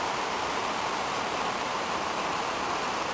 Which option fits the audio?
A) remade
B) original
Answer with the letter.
A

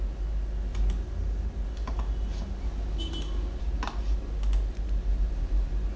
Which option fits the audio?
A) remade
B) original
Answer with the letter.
B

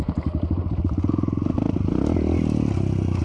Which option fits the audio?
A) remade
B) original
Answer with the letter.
B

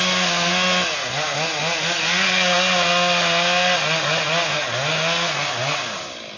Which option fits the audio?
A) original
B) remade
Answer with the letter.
A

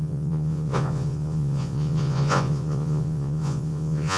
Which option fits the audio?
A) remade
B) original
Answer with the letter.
A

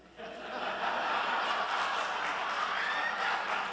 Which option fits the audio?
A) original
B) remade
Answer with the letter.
A